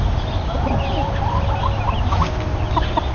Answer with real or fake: real